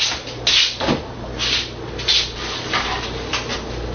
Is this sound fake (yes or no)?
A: no